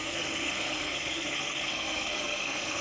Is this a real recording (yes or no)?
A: no